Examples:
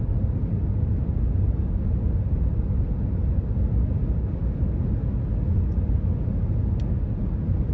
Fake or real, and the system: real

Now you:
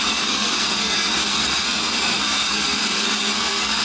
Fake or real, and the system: fake, codec, SNAC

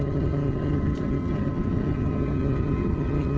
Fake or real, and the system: fake, vocoder, HiFi-GAN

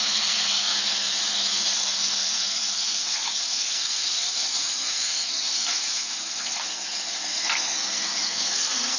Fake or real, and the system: fake, codec, SNAC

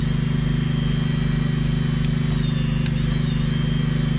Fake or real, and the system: real